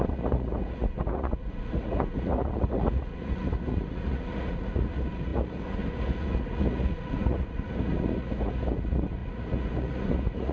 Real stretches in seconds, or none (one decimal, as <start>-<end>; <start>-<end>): none